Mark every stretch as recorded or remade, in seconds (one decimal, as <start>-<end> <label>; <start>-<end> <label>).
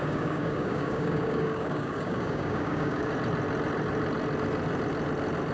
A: 0.0-3.1 remade; 3.1-5.5 recorded